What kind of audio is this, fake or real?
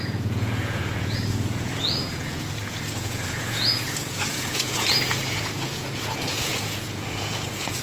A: fake